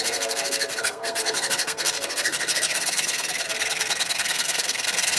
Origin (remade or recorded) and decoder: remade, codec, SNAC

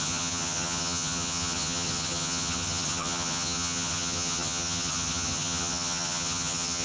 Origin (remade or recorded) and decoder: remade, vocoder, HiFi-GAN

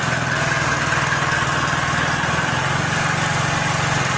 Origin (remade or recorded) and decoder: recorded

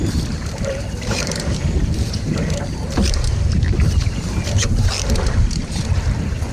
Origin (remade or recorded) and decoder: remade, vocoder, BigVGAN v2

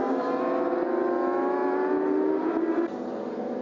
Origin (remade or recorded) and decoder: recorded